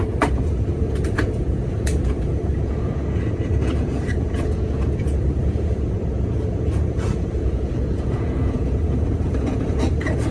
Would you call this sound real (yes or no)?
no